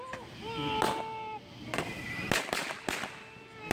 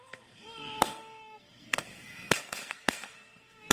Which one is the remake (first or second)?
second